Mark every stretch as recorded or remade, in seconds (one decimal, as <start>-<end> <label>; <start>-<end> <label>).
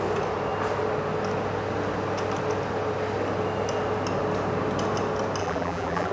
0.0-5.4 recorded; 5.4-6.1 remade